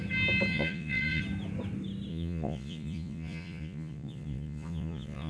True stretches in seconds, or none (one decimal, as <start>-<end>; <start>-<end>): 0.0-0.5; 1.2-2.1